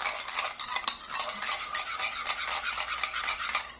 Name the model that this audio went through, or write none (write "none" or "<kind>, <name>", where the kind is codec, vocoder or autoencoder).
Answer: none